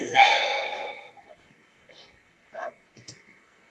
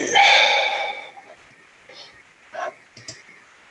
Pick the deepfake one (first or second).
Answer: first